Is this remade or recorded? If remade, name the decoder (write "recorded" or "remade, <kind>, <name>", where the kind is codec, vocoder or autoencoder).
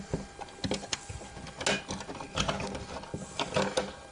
recorded